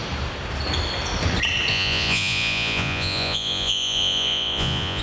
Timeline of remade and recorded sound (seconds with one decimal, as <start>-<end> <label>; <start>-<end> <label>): 0.0-1.7 recorded; 1.7-5.0 remade

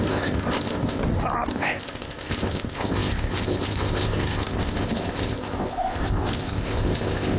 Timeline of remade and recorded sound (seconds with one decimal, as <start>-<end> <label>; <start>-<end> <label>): 0.0-1.0 remade; 1.0-1.5 recorded; 1.5-7.4 remade

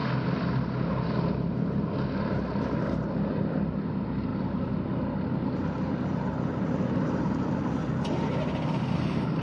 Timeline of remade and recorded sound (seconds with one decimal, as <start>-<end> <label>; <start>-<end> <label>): 0.0-9.4 recorded

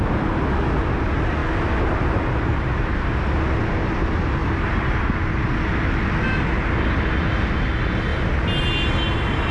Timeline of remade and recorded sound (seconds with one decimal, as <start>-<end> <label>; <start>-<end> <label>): 0.0-9.5 recorded

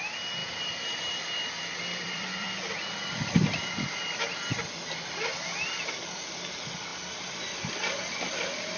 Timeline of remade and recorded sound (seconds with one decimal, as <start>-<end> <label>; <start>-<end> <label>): 0.0-0.4 recorded; 0.4-5.1 remade; 5.1-6.9 recorded; 6.9-8.8 remade